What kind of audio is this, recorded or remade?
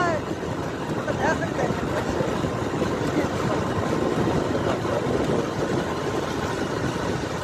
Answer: recorded